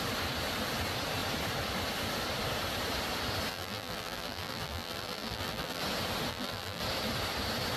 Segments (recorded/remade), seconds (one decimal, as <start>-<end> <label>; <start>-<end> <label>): 0.0-3.5 recorded; 3.5-5.8 remade; 5.8-6.3 recorded; 6.3-6.8 remade; 6.8-7.8 recorded